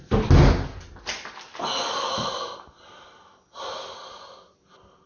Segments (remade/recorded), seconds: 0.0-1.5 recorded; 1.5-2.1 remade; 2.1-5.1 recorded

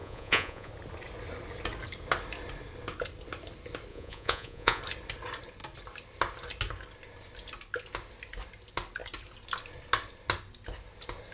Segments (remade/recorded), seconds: 0.0-0.7 remade; 0.7-3.9 recorded; 3.9-4.8 remade; 4.8-11.3 recorded

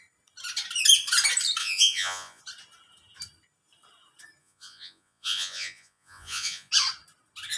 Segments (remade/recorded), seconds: 0.0-1.6 recorded; 1.6-2.4 remade; 2.4-4.4 recorded; 4.4-6.7 remade; 6.7-7.6 recorded

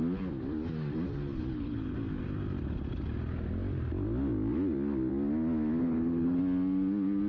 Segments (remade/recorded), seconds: 0.0-1.3 recorded; 1.3-1.9 remade; 1.9-5.8 recorded; 5.8-6.4 remade; 6.4-7.3 recorded

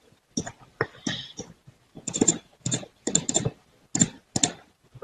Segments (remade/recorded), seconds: 0.0-0.7 recorded; 0.7-1.4 remade; 1.4-5.0 recorded

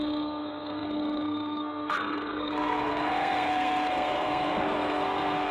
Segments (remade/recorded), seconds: 0.0-5.5 remade

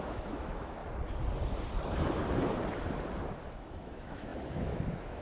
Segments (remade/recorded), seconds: 0.0-0.8 remade; 0.8-3.5 recorded; 3.5-5.2 remade

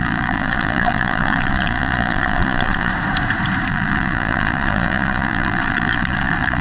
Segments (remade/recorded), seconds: 0.0-2.9 remade; 2.9-3.7 recorded; 3.7-6.6 remade